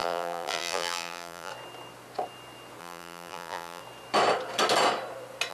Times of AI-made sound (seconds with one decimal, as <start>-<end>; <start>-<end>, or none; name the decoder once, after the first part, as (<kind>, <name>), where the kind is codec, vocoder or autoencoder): 0.0-1.5 (vocoder, BigVGAN v2); 2.8-3.8